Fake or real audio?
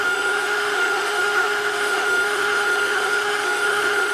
fake